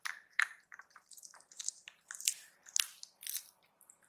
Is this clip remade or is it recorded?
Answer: remade